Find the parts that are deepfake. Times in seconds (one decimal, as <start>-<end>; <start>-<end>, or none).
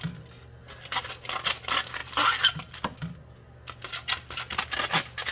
none